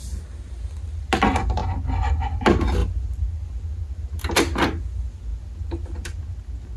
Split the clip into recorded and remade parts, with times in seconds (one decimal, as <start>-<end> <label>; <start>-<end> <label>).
0.0-6.8 recorded